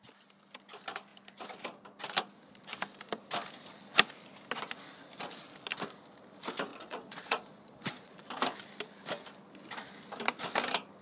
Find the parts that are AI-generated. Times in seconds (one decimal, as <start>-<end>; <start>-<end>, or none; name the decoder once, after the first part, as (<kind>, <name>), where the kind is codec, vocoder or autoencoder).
6.7-8.2 (vocoder, Vocos)